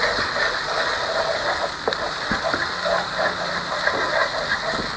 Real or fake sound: real